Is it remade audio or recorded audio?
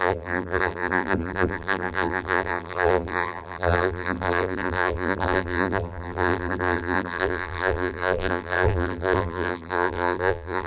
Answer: remade